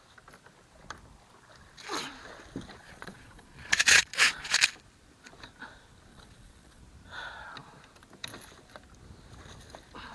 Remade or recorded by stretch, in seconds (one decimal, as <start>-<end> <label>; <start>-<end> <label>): 0.0-2.8 recorded; 2.8-4.6 remade; 4.6-6.1 recorded; 6.1-6.8 remade; 6.8-10.1 recorded